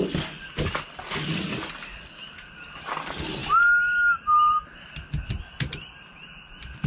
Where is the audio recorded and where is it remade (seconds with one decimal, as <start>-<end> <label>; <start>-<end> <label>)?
0.0-6.9 recorded